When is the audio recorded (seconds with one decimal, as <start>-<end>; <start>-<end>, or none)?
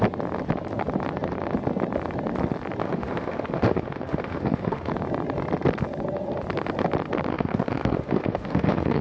0.0-2.8; 4.9-7.3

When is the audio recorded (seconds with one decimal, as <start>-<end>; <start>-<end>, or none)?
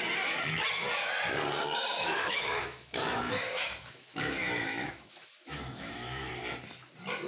0.0-1.9; 6.3-7.3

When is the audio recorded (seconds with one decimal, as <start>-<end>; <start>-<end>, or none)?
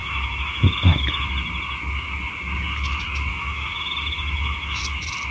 1.3-3.3; 4.8-5.3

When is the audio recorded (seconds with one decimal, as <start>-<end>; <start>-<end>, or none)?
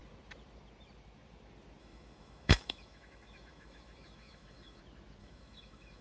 0.0-1.8; 4.8-5.2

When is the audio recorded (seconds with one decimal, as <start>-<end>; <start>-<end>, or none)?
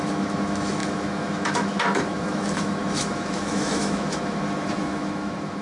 none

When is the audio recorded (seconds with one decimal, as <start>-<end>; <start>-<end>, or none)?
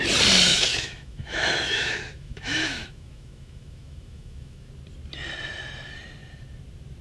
0.0-0.5; 4.7-7.0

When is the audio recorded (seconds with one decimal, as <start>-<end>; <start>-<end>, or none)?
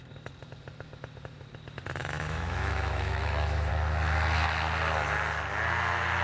0.0-2.0; 3.7-6.2